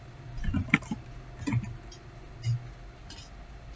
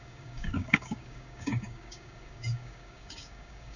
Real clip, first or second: first